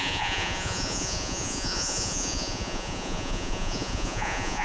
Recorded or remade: remade